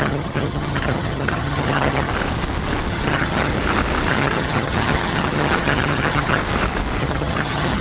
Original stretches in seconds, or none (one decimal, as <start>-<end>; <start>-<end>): 2.1-2.9; 3.5-4.1; 6.4-7.0